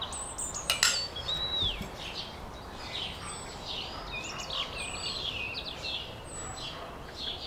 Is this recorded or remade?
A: recorded